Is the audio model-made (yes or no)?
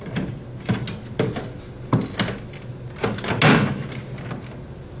no